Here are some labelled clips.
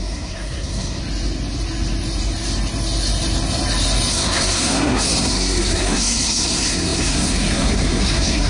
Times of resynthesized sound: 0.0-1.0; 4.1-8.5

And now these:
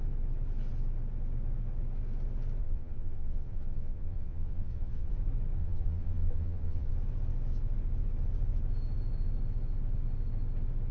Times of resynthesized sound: 2.6-5.1; 5.6-6.9

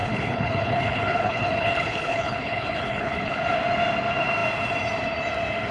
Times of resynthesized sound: 0.0-3.4

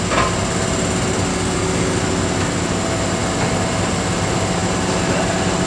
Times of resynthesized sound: 1.3-2.0

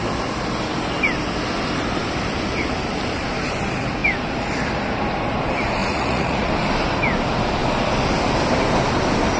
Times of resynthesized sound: 5.8-6.5